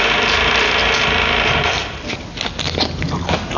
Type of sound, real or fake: real